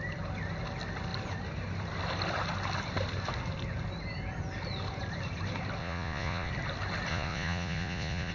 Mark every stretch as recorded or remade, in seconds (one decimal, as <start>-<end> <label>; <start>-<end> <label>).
0.0-5.8 recorded; 5.8-6.5 remade; 6.5-7.1 recorded; 7.1-8.3 remade